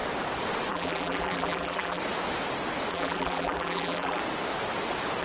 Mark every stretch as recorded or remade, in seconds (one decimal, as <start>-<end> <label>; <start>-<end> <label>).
0.0-0.7 recorded; 0.7-2.0 remade; 2.0-2.9 recorded; 2.9-4.2 remade; 4.2-5.2 recorded